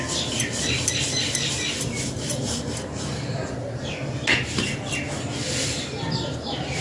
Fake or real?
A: real